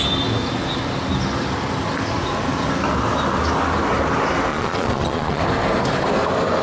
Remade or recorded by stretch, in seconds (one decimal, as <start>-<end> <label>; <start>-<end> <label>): 0.0-4.5 recorded; 4.5-5.4 remade; 5.4-6.6 recorded